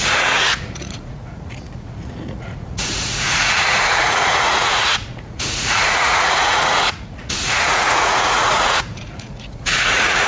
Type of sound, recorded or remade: remade